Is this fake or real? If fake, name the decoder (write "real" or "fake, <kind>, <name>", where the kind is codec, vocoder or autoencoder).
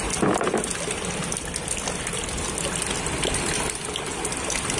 real